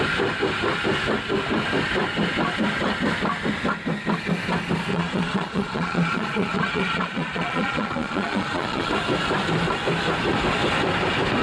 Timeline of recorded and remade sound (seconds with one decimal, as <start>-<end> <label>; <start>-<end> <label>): 0.0-4.9 recorded; 4.9-8.9 remade; 8.9-11.4 recorded